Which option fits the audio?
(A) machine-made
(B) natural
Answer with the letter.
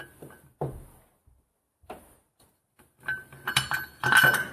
B